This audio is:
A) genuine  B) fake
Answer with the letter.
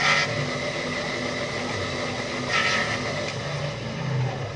A